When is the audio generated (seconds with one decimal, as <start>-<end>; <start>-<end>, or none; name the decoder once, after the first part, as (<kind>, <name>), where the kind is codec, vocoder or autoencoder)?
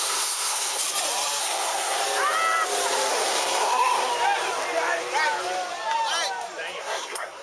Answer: 0.0-0.8 (codec, SNAC); 1.4-2.0; 3.1-4.1; 6.8-7.4